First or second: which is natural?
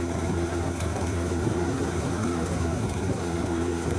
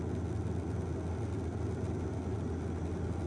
second